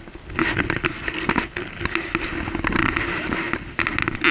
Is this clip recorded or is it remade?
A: recorded